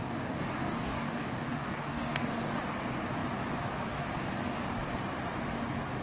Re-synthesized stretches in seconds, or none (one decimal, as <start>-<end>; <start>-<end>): 0.0-2.6